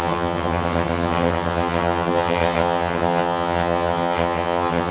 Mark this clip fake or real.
fake